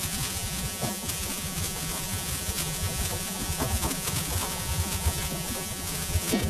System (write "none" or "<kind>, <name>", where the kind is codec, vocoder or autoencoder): vocoder, Vocos